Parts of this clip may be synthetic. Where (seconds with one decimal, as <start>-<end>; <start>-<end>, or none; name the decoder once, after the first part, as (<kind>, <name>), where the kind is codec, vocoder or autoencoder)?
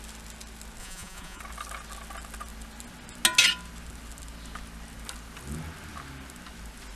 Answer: 0.8-1.4 (vocoder, Vocos)